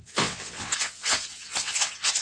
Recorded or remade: remade